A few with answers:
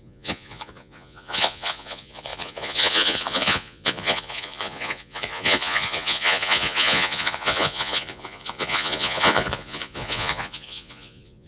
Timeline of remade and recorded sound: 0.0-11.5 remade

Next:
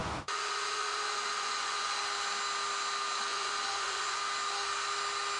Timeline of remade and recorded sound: 0.0-2.0 remade; 2.0-3.3 recorded; 3.3-4.2 remade; 4.2-5.4 recorded

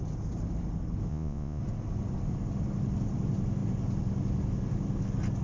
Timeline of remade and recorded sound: 0.0-1.1 recorded; 1.1-1.6 remade; 1.6-5.4 recorded

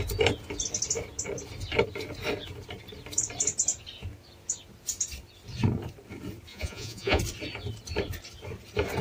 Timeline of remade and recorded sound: 0.0-6.5 recorded; 6.5-7.2 remade; 7.2-9.0 recorded

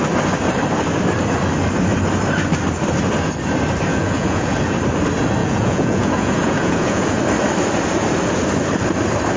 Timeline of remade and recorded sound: 0.0-3.9 recorded; 3.9-4.6 remade; 4.6-5.4 recorded; 5.4-7.2 remade; 7.2-9.4 recorded

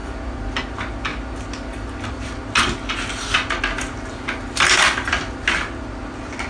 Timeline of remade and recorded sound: 0.0-6.5 recorded

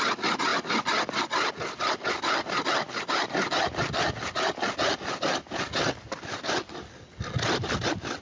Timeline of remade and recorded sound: 0.0-8.2 recorded